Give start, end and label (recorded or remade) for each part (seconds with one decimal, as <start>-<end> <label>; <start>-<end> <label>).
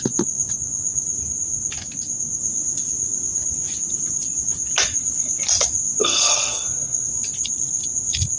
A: 0.0-6.0 recorded; 6.0-7.1 remade; 7.1-8.4 recorded